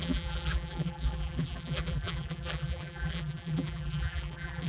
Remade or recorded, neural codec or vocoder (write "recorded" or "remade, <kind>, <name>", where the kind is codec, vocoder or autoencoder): remade, vocoder, BigVGAN v2